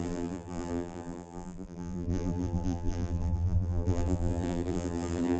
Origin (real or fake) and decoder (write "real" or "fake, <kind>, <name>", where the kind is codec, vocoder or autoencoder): fake, vocoder, BigVGAN v2